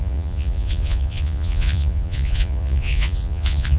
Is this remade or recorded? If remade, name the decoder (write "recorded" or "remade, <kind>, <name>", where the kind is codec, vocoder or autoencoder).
remade, vocoder, Vocos